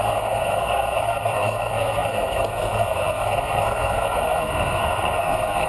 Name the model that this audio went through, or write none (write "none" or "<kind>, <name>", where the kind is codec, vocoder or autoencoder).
codec, SNAC